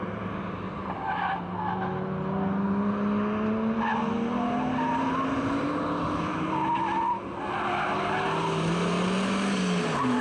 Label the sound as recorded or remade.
recorded